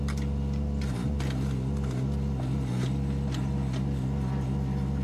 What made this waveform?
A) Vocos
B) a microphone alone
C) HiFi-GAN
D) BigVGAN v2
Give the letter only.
B